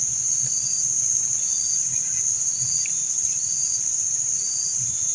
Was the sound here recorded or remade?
recorded